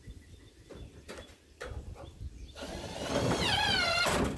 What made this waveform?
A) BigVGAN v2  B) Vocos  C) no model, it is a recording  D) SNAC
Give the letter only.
C